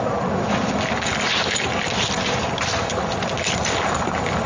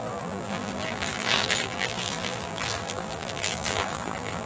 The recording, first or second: first